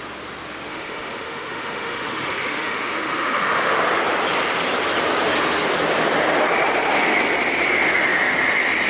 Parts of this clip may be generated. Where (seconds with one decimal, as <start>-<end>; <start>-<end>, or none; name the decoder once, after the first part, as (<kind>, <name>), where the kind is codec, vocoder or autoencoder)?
0.7-3.8 (autoencoder, DAC-VAE)